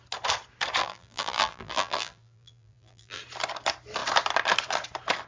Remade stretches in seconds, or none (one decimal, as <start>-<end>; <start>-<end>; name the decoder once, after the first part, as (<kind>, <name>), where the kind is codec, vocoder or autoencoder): 0.8-3.2 (vocoder, BigVGAN v2)